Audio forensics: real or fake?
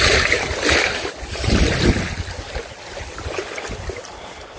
real